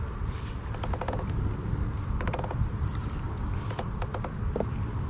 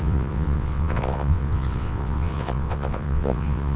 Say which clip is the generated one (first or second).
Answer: second